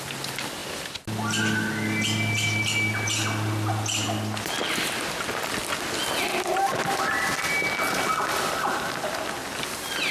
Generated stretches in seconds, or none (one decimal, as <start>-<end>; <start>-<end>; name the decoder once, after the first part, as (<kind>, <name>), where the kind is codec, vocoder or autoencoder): none